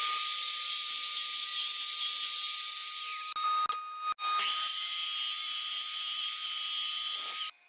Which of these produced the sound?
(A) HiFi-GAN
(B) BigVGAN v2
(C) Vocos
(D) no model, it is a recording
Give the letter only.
D